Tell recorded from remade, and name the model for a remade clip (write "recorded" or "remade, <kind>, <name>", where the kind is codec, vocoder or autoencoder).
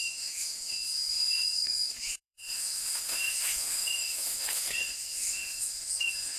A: remade, autoencoder, DAC-VAE